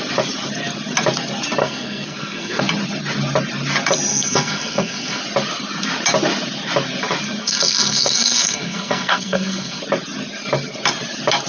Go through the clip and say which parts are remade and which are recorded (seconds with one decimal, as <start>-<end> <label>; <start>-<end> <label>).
0.0-1.6 recorded; 1.6-2.6 remade; 2.6-4.1 recorded; 4.1-5.2 remade; 5.2-7.4 recorded; 7.4-9.8 remade; 9.8-11.5 recorded